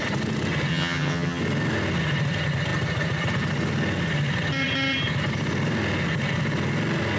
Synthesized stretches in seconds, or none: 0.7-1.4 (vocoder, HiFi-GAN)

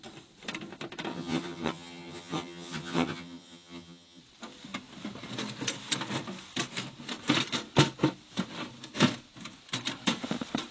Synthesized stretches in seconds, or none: 1.1-4.2 (vocoder, HiFi-GAN)

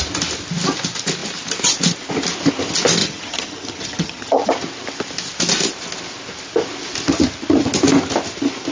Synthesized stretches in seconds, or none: 3.0-4.5 (vocoder, HiFi-GAN)